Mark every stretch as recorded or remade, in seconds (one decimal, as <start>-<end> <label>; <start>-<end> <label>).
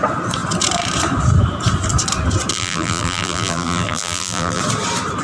0.0-2.5 recorded; 2.5-4.6 remade; 4.6-5.2 recorded